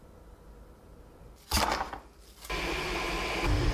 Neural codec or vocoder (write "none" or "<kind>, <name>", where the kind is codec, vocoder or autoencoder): none